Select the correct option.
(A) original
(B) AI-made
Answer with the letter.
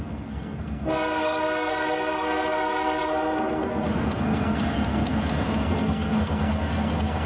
B